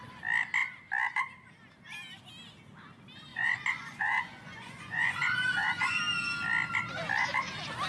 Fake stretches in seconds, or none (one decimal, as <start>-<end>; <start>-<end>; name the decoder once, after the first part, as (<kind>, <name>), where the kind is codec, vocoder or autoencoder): 3.3-6.0 (vocoder, Vocos)